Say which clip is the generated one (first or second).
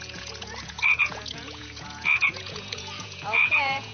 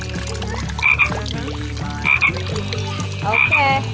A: first